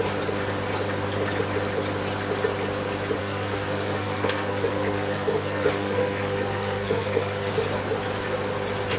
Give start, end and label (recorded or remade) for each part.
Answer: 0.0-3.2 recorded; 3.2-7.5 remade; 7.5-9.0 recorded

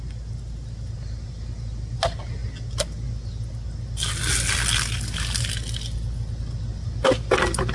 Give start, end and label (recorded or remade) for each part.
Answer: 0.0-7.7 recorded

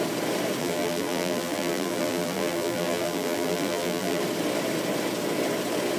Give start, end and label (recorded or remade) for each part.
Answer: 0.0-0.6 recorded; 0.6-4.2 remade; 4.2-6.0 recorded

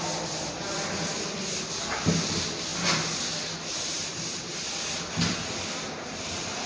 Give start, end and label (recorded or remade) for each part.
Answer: 0.0-6.7 recorded